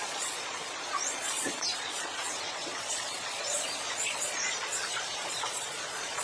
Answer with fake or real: fake